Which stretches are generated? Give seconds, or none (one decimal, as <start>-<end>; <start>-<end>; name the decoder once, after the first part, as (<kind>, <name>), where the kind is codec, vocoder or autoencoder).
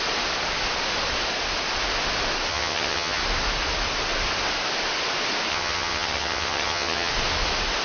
2.5-3.2 (vocoder, HiFi-GAN); 5.5-7.1